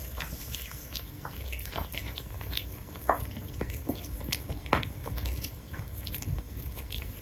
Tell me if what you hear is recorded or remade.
remade